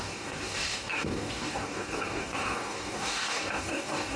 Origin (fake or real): fake